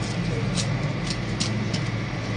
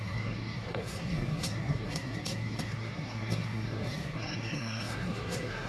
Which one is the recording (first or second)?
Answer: first